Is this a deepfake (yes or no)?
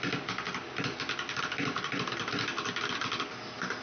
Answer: no